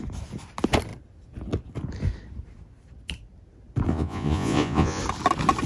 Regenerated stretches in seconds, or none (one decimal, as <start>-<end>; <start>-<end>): 3.9-5.0